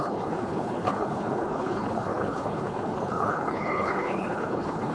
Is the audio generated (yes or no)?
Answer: yes